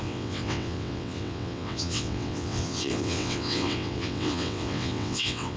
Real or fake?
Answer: fake